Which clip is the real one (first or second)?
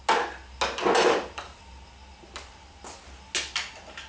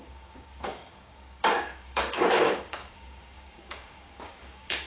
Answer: first